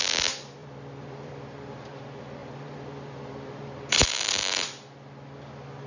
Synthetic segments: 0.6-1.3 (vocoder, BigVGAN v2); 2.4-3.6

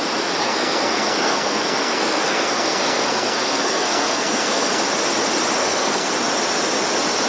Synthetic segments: 0.4-4.8 (codec, SNAC); 5.6-6.1

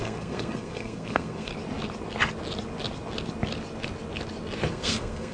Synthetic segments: 0.0-1.5 (codec, SNAC); 4.7-5.3

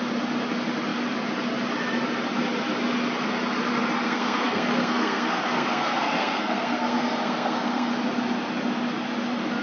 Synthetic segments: 4.0-7.9 (codec, SNAC)

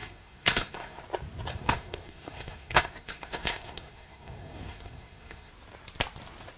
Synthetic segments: 0.0-1.0 (codec, SNAC); 1.5-5.5